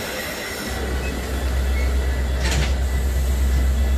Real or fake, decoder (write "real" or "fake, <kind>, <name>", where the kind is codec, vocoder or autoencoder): real